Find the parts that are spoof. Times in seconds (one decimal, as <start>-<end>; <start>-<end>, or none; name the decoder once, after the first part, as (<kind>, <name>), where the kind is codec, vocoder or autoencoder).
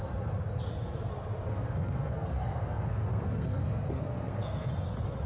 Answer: 1.5-4.7 (codec, SNAC)